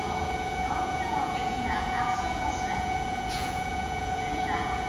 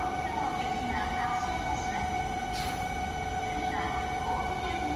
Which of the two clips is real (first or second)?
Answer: second